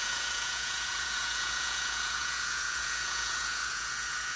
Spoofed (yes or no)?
yes